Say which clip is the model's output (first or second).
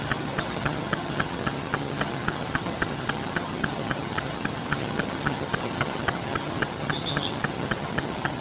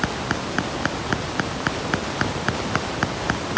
first